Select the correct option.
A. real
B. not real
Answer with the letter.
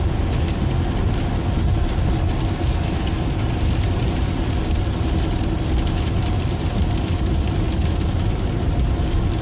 A